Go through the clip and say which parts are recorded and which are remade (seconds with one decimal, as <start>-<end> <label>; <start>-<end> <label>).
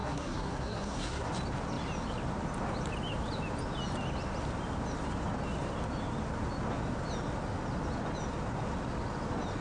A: 0.0-1.3 remade; 1.3-9.6 recorded